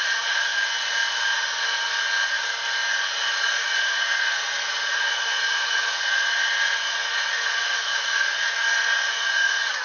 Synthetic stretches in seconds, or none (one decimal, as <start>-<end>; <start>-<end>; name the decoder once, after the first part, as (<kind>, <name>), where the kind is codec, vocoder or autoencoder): 0.0-0.5 (vocoder, Vocos); 3.7-9.8